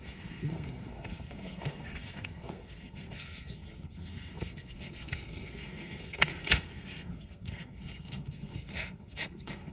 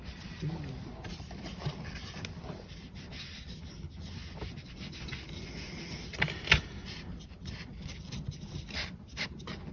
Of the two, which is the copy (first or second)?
first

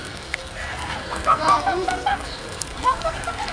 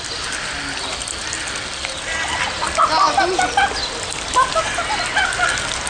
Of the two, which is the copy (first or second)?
first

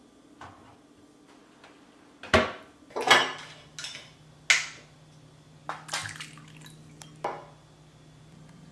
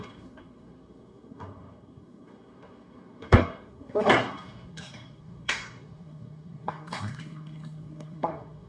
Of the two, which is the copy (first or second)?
second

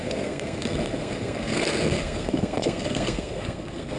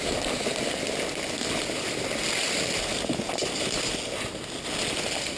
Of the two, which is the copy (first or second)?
first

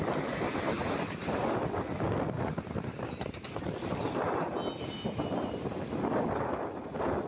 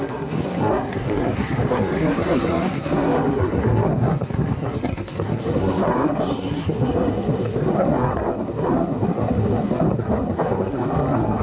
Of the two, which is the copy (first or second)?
second